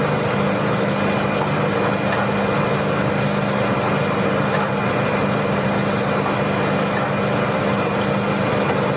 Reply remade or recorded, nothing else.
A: recorded